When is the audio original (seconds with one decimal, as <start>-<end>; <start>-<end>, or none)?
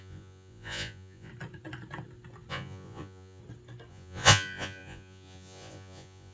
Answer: 1.3-2.5; 3.4-3.9